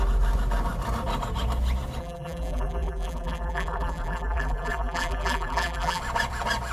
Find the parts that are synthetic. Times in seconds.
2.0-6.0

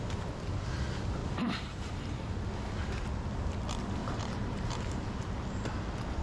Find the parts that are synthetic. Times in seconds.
1.2-2.3; 4.0-5.0

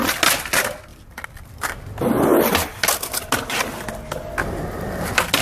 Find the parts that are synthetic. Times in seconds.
0.9-1.7

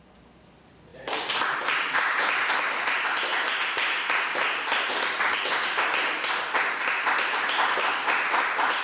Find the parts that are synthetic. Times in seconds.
0.0-8.8

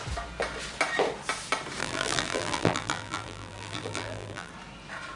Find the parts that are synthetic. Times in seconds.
1.8-4.5